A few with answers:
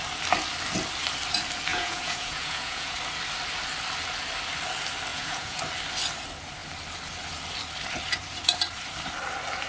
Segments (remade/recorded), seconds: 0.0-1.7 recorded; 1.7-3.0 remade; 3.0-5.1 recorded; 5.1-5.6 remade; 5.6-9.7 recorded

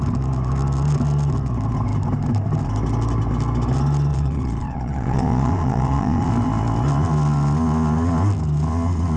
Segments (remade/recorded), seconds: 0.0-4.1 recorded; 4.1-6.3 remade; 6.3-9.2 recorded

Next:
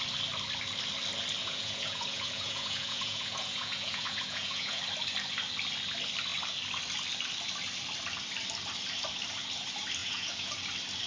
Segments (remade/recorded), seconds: 0.0-1.4 recorded; 1.4-4.8 remade; 4.8-10.0 recorded; 10.0-10.5 remade; 10.5-11.1 recorded

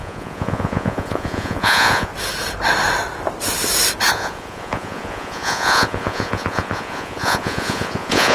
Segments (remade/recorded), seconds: 0.0-2.1 remade; 2.1-4.1 recorded; 4.1-8.3 remade

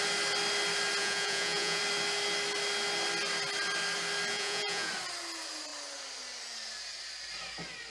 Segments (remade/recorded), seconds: 0.0-1.0 recorded; 1.0-1.8 remade; 1.8-4.3 recorded; 4.3-4.9 remade; 4.9-7.9 recorded

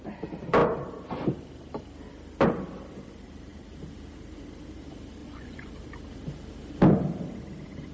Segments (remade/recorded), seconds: 0.0-5.2 recorded; 5.2-5.7 remade; 5.7-7.9 recorded

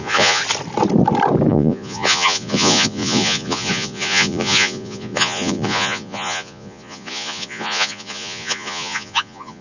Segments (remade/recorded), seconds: 0.0-0.4 remade; 0.4-1.5 recorded; 1.5-9.6 remade